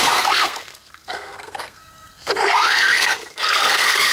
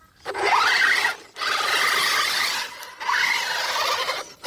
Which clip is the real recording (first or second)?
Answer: second